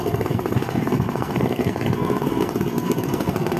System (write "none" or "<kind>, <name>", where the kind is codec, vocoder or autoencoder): codec, SNAC